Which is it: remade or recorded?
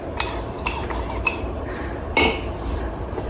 recorded